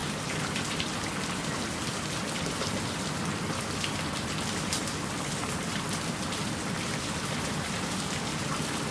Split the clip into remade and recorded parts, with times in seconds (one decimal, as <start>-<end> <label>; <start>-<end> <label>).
0.0-8.9 recorded

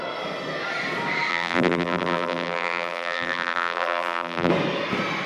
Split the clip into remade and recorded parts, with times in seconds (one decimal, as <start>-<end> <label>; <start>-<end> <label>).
0.0-1.3 recorded; 1.3-4.5 remade; 4.5-5.3 recorded

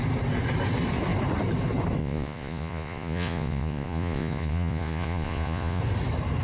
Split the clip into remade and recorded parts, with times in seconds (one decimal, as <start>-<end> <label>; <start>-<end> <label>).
0.0-2.0 recorded; 2.0-5.8 remade; 5.8-6.4 recorded

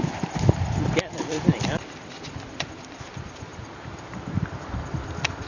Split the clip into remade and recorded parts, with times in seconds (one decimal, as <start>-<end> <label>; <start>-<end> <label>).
0.0-3.5 recorded; 3.5-4.8 remade; 4.8-5.5 recorded

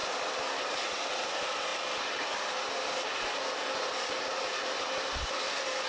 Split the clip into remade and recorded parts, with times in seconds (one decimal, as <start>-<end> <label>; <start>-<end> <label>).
0.0-5.9 recorded